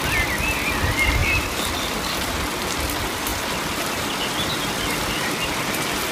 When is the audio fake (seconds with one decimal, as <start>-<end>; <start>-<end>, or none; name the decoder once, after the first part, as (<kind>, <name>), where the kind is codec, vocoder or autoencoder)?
1.2-2.8 (vocoder, BigVGAN v2); 3.3-5.6

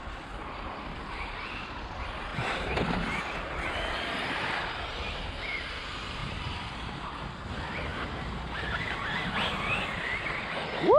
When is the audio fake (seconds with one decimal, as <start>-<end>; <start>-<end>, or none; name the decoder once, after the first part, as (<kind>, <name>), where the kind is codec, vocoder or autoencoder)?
2.3-3.2 (vocoder, BigVGAN v2); 6.2-7.1; 7.9-9.6

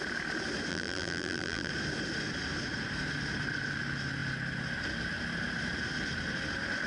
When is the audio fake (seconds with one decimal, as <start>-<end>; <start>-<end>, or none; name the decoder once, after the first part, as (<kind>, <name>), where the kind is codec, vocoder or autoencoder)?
0.7-1.7 (vocoder, BigVGAN v2)

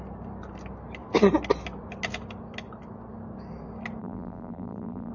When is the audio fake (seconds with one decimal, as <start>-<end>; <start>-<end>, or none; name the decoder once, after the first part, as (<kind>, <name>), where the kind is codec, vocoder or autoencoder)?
4.0-5.1 (vocoder, BigVGAN v2)

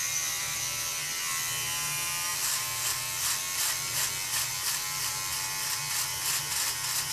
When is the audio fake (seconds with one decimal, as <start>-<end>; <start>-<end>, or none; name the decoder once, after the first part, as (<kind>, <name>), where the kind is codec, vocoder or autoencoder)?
0.4-0.9 (vocoder, BigVGAN v2)

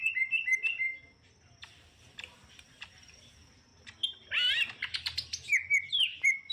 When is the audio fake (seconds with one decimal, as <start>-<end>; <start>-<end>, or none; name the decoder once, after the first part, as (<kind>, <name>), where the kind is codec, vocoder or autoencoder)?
1.6-3.7 (vocoder, BigVGAN v2); 5.9-6.5